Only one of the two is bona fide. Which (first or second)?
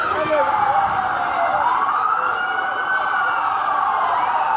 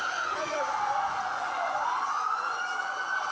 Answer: first